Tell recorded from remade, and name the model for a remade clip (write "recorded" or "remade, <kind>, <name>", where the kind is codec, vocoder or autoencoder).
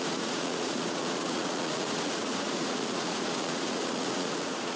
remade, vocoder, Vocos